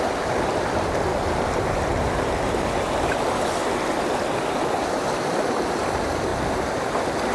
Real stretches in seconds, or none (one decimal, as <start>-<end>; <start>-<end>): 0.0-7.3